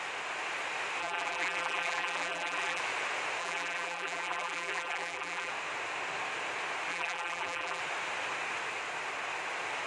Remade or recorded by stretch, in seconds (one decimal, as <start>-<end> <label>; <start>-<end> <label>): 0.0-1.0 recorded; 1.0-2.8 remade; 2.8-3.4 recorded; 3.4-5.5 remade; 5.5-6.9 recorded; 6.9-7.8 remade; 7.8-9.9 recorded